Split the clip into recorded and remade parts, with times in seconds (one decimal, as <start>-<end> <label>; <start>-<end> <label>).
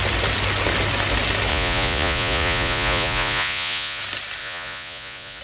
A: 0.0-1.5 recorded; 1.5-4.0 remade; 4.0-4.4 recorded; 4.4-5.4 remade